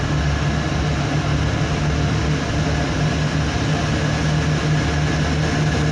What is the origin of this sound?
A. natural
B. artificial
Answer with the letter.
A